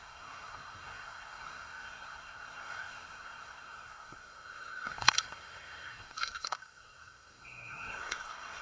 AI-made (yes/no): yes